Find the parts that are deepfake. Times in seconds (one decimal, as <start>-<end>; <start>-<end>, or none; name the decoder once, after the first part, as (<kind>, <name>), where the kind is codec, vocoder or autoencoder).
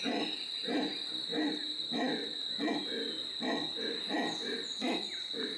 none